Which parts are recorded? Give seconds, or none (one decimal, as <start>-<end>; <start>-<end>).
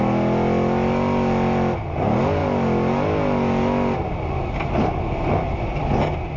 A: 0.0-6.4